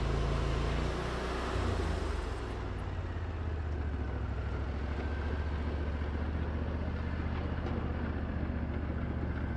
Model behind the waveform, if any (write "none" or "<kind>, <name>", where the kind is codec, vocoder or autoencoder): none